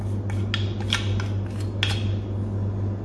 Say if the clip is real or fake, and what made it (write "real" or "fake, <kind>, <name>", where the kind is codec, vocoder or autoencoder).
real